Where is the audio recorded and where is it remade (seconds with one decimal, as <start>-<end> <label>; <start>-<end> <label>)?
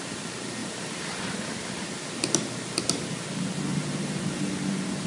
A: 0.0-0.6 recorded; 0.6-1.5 remade; 1.5-3.7 recorded; 3.7-4.5 remade; 4.5-5.1 recorded